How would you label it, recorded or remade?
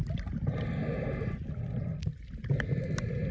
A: recorded